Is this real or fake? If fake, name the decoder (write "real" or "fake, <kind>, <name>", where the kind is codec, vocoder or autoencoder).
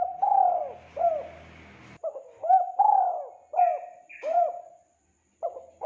real